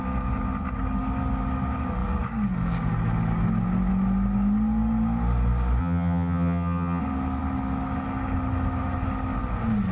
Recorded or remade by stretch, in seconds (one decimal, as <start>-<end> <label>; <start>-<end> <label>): 0.0-5.8 recorded; 5.8-7.0 remade; 7.0-9.9 recorded